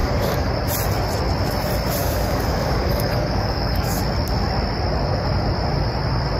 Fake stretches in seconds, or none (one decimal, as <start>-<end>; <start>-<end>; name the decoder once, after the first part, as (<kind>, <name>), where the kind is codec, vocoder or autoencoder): 0.0-0.5 (codec, DAC); 2.0-4.0